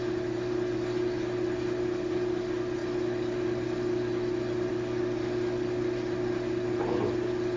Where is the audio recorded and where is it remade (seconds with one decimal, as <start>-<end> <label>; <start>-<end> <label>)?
0.0-7.6 recorded

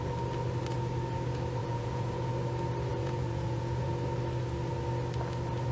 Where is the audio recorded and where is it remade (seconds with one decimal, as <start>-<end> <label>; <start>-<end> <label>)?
0.0-1.6 recorded; 1.6-2.3 remade; 2.3-2.9 recorded; 2.9-3.9 remade; 3.9-5.7 recorded